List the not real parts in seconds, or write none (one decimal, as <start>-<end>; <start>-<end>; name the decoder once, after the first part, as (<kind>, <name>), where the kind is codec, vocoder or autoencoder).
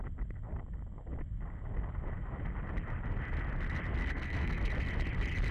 4.0-4.7 (codec, SNAC)